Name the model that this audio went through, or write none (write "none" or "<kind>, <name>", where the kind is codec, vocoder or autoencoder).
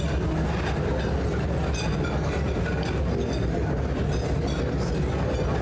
none